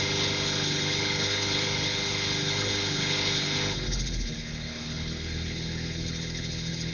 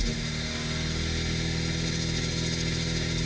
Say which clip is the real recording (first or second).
second